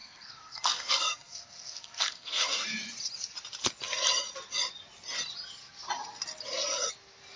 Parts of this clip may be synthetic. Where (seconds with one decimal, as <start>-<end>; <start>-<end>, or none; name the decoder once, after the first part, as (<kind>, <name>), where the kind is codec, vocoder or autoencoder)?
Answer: 0.0-2.7 (codec, SNAC)